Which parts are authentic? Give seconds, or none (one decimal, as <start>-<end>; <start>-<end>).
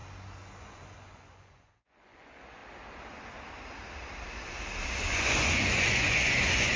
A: 0.0-0.6; 2.6-5.1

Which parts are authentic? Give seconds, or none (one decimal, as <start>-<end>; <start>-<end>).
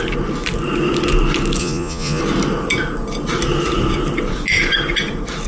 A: 0.0-1.6; 2.2-5.5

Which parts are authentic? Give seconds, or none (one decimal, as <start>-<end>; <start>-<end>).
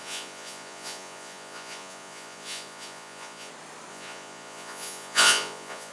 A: 3.5-3.9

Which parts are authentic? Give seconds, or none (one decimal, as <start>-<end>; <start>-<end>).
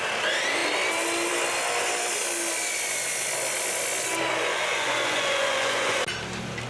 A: 0.0-4.5; 6.0-6.7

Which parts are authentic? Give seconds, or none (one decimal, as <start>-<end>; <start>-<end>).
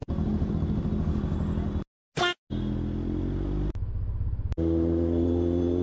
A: 0.5-5.8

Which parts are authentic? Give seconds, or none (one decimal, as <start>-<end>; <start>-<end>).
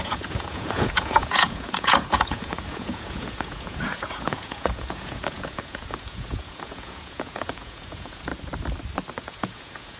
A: 8.3-9.2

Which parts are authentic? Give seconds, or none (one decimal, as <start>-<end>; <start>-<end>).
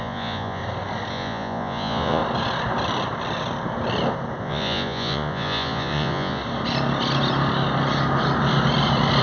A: 0.6-1.1; 2.2-4.4; 6.4-9.2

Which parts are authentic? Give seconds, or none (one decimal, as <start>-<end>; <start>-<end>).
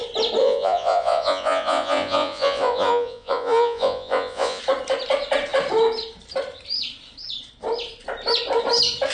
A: 0.0-0.4; 4.6-9.1